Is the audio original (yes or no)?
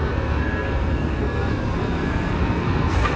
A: no